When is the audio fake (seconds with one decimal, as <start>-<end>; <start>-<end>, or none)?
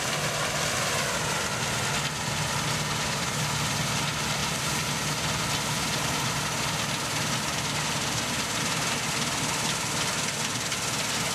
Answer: none